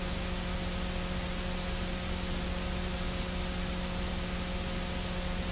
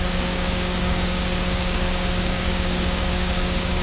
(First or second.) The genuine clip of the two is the first